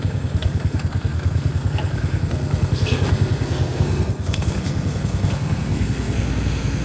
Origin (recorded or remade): remade